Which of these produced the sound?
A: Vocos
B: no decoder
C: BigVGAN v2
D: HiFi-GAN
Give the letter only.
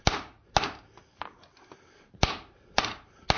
B